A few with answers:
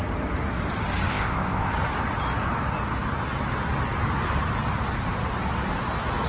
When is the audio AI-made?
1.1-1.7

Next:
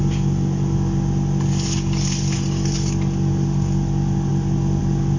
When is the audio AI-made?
none

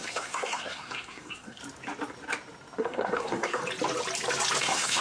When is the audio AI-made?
0.0-1.6; 2.8-3.6; 4.6-5.0

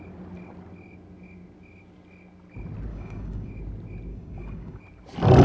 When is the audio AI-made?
2.9-3.5; 4.1-4.8

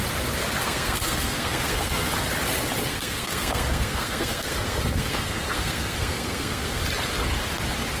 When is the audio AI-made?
0.6-2.1; 2.8-6.8

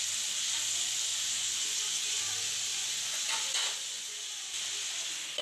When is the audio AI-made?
1.1-2.2; 2.7-4.5

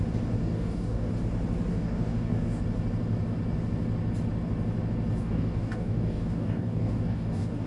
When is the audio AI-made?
0.4-1.1; 1.7-2.6; 5.2-7.7

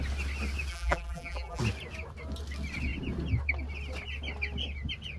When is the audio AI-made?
0.7-1.6